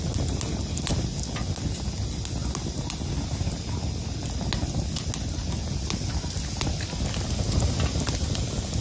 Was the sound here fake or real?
real